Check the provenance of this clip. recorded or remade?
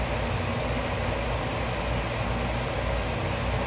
recorded